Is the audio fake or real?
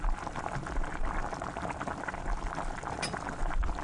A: real